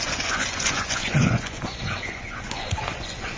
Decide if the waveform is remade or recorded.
remade